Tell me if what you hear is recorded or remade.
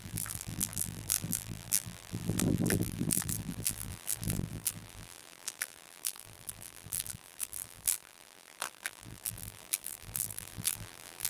remade